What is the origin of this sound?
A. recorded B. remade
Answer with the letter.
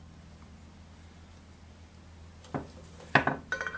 A